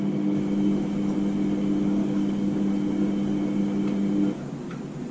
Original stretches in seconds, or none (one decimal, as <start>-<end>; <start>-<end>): 0.0-2.0; 2.7-5.1